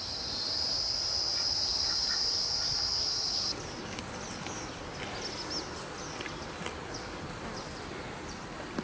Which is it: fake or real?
real